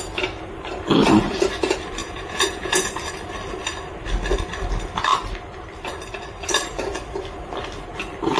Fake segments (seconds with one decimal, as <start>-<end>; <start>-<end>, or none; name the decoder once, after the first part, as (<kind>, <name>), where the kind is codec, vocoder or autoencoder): 2.0-2.9 (vocoder, Vocos)